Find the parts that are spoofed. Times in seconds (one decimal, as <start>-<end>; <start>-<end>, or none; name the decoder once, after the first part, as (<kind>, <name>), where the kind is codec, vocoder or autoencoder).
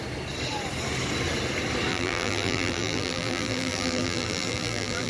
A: 1.9-5.1 (vocoder, BigVGAN v2)